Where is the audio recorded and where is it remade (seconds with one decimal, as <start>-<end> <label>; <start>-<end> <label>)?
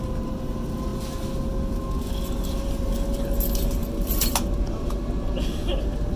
0.0-6.2 recorded